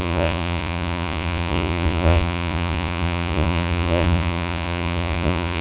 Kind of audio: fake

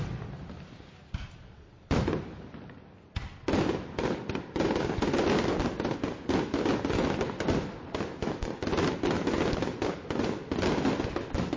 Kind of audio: real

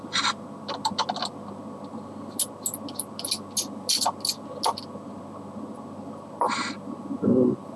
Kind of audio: real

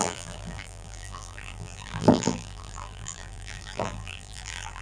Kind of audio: fake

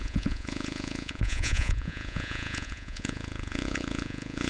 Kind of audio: fake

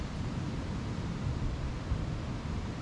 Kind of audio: real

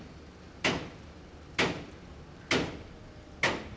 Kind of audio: real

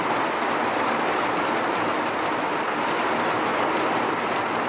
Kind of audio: real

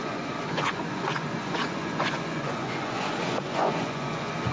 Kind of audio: fake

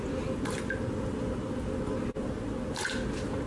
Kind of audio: real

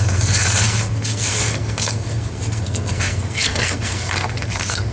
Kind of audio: fake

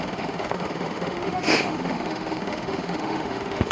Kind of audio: fake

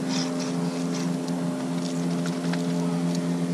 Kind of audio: real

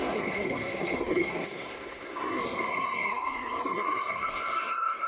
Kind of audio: fake